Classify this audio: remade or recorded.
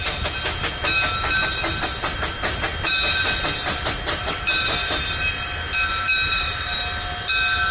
recorded